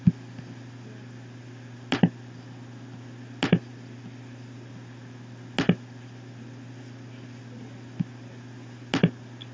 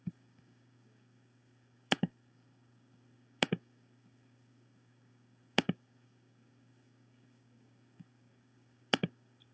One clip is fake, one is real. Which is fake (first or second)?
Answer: second